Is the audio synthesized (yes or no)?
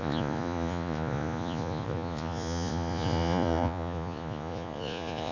yes